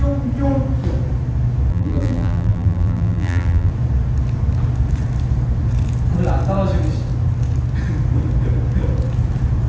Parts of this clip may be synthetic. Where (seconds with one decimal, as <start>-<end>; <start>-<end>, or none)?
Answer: 1.7-3.7